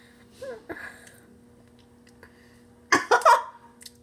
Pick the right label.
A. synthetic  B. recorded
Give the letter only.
B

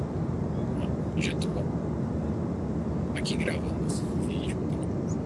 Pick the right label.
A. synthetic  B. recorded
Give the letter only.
B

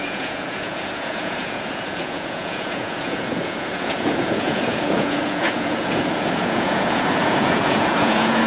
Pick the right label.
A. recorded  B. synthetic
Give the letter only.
B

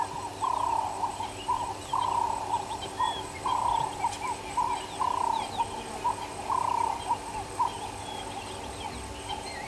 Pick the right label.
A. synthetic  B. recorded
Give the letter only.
B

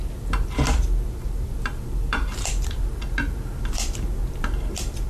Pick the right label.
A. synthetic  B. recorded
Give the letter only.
A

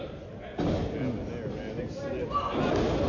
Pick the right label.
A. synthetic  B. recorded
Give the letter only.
B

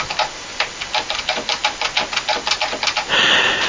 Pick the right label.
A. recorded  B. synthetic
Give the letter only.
A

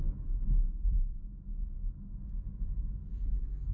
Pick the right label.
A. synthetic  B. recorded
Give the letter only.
A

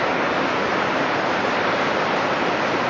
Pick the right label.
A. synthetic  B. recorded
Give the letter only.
B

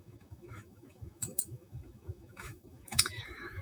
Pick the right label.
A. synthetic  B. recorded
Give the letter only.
A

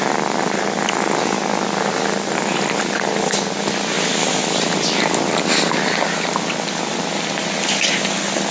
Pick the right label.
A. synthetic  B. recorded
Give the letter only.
B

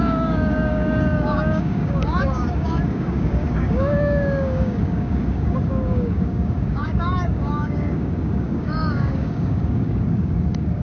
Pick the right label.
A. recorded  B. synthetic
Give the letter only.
B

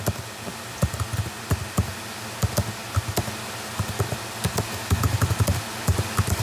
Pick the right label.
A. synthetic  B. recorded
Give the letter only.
B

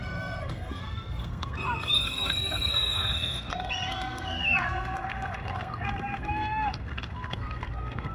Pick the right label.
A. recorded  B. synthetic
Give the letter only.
B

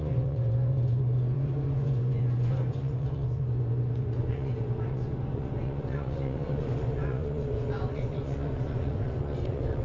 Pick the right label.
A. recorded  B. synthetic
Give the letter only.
B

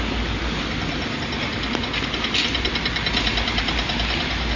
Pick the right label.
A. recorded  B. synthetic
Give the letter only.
A